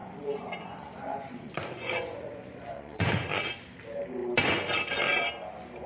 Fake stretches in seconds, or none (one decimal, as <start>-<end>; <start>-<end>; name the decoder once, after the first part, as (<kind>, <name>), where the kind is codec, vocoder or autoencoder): 0.0-3.5 (vocoder, Vocos)